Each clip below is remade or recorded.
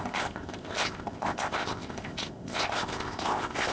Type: remade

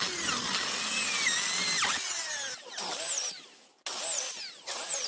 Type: recorded